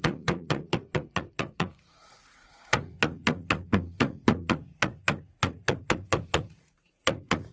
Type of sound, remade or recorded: remade